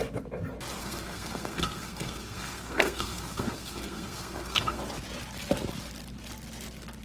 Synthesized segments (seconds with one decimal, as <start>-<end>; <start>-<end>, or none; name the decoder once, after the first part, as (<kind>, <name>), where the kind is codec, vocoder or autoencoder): 0.8-4.8 (codec, SNAC)